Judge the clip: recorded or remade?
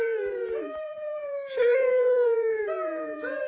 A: remade